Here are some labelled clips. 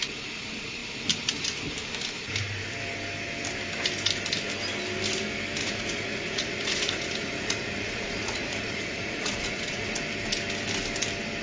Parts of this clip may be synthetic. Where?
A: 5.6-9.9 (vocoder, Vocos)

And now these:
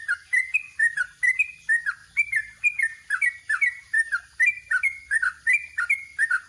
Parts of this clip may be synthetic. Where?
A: none

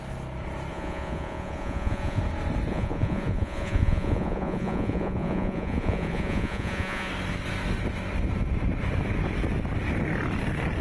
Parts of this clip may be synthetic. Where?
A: 0.7-2.2 (vocoder, Vocos); 2.7-7.1

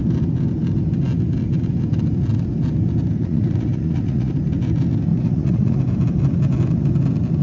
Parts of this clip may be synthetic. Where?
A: 3.2-4.3 (vocoder, Vocos); 5.1-5.8

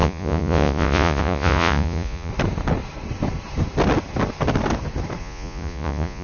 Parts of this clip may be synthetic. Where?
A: 0.0-2.3 (vocoder, Vocos); 5.2-6.2

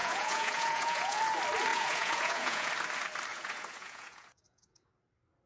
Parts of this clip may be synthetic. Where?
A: 0.0-1.2 (vocoder, Vocos); 1.7-2.7; 3.3-4.9